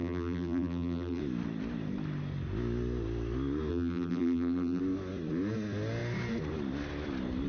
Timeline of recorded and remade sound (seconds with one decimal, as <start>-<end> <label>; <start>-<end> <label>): 0.0-1.2 remade; 1.2-3.7 recorded; 3.7-4.8 remade; 4.8-7.5 recorded